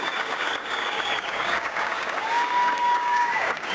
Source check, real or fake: fake